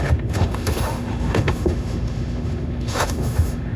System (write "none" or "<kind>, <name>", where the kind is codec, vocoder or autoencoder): autoencoder, DAC-VAE